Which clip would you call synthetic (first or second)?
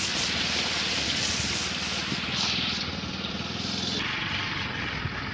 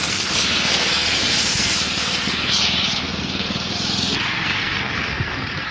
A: second